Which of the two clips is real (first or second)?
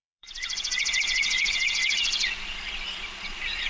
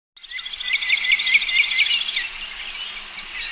second